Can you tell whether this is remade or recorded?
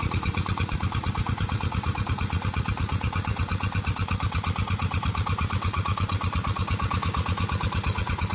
remade